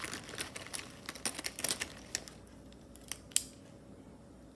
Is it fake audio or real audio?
real